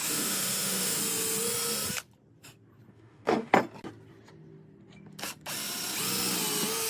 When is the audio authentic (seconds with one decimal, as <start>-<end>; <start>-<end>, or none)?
1.0-2.9; 3.5-6.9